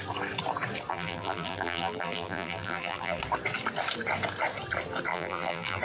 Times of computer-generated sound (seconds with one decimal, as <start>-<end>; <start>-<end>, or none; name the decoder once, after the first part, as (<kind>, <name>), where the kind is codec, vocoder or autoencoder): 0.9-3.2 (vocoder, BigVGAN v2); 5.1-5.8